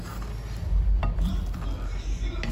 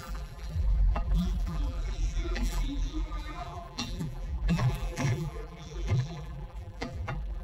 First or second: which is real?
first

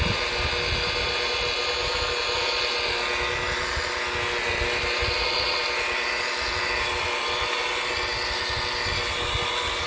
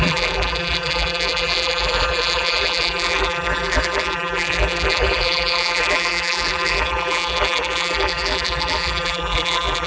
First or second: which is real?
first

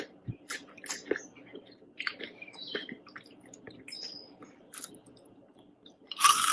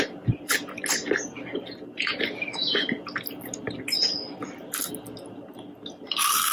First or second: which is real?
second